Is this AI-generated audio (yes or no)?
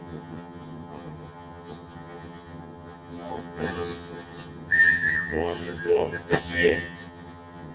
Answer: yes